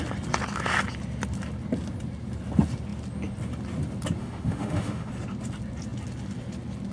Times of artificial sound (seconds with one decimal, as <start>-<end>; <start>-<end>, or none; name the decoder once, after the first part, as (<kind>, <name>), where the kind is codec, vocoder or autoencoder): 4.2-5.1 (autoencoder, DAC-VAE)